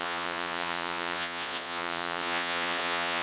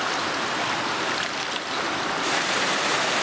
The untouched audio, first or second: second